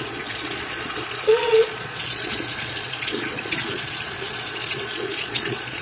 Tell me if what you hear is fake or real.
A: fake